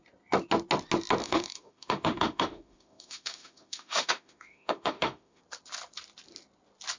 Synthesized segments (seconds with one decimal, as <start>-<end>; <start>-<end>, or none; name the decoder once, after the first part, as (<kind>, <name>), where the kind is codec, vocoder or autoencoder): 1.2-5.4 (autoencoder, DAC-VAE)

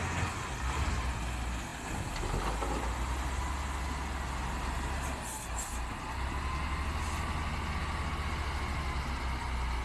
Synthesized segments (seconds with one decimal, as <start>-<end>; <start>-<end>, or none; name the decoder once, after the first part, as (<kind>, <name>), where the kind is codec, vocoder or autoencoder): none

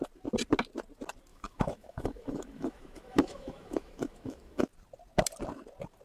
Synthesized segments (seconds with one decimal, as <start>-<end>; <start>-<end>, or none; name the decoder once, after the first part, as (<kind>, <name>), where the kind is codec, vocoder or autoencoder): 1.3-4.7 (autoencoder, DAC-VAE)

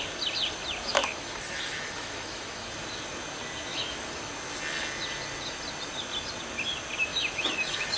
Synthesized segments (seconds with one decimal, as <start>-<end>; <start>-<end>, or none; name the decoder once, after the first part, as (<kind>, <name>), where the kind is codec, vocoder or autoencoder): 1.0-2.7 (autoencoder, DAC-VAE); 3.7-4.3; 7.1-8.0

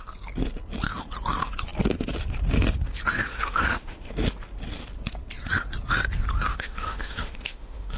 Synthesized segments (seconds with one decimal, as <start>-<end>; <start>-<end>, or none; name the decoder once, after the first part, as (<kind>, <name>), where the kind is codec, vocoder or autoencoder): 3.3-4.1 (autoencoder, DAC-VAE); 6.5-8.0

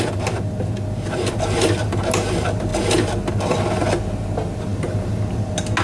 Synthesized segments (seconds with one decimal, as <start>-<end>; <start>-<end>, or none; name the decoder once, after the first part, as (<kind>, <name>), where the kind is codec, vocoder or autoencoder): none